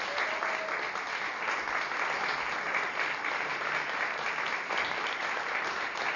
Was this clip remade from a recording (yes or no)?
no